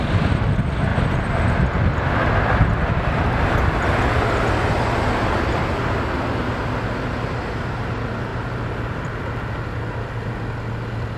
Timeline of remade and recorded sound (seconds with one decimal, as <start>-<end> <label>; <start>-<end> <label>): 0.0-0.9 recorded; 0.9-1.5 remade; 1.5-8.3 recorded; 8.3-9.2 remade; 9.2-11.2 recorded